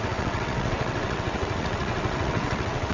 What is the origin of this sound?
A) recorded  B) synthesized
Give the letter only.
B